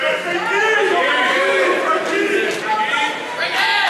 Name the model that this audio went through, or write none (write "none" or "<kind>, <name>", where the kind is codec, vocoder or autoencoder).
vocoder, BigVGAN v2